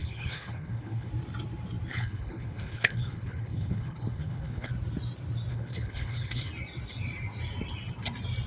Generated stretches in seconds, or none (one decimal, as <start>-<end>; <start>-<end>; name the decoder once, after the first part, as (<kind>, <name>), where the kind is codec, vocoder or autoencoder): 0.0-1.1 (codec, HILCodec); 1.9-4.7; 5.5-6.5